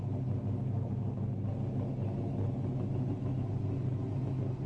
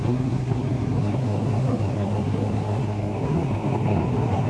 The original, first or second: first